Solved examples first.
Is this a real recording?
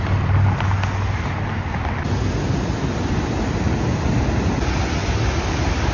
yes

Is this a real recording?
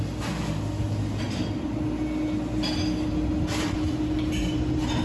yes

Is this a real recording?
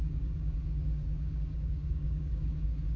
no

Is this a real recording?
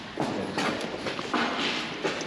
yes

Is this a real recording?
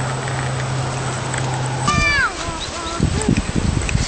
yes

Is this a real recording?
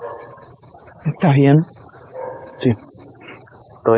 no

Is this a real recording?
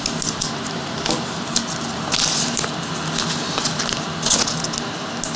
yes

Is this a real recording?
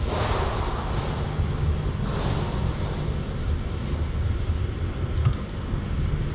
yes